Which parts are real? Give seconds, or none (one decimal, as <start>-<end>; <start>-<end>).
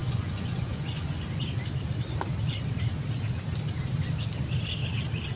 1.4-5.4